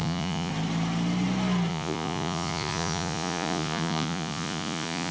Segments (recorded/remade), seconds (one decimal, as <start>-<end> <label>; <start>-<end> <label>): 0.0-0.5 remade; 0.5-1.7 recorded; 1.7-5.1 remade